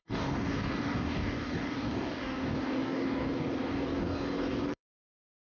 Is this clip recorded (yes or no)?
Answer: no